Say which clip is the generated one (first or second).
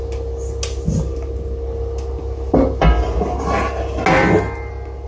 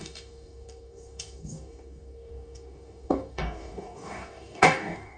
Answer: second